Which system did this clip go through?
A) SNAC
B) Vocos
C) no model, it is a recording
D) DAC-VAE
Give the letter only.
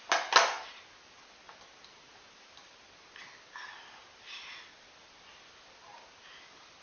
C